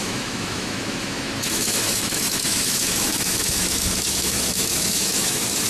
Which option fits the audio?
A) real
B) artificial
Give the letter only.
B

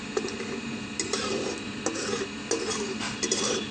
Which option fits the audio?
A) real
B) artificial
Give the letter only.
A